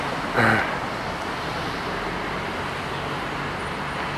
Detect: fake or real real